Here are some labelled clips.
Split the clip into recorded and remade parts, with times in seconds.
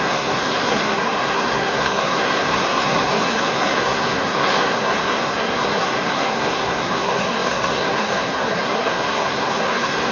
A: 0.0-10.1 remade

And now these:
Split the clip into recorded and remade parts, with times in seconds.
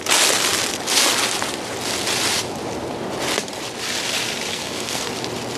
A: 0.0-4.5 recorded; 4.5-5.1 remade; 5.1-5.6 recorded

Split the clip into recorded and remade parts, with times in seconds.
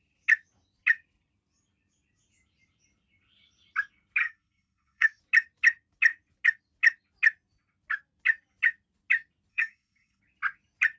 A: 0.0-4.2 recorded; 4.2-5.2 remade; 5.2-9.5 recorded; 9.5-10.2 remade; 10.2-11.0 recorded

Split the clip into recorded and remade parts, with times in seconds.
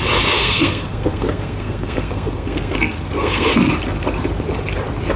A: 0.0-0.4 recorded; 0.4-3.5 remade; 3.5-5.2 recorded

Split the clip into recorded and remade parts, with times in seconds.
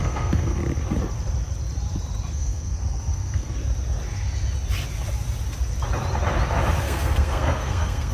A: 0.0-0.6 remade; 0.6-2.3 recorded; 2.3-3.6 remade; 3.6-6.8 recorded; 6.8-8.1 remade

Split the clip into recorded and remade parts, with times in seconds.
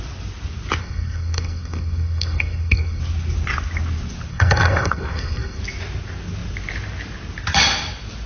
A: 0.0-0.8 recorded; 0.8-3.0 remade; 3.0-4.3 recorded; 4.3-5.6 remade; 5.6-8.3 recorded